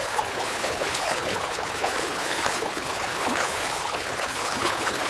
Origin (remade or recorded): remade